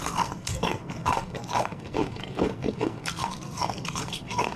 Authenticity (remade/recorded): remade